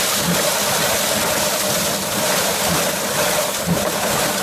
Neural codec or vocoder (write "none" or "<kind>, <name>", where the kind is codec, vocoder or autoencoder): none